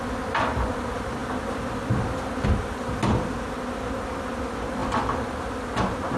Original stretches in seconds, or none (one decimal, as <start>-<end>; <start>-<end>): 0.0-6.2